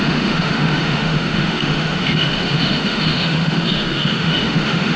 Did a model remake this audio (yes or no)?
yes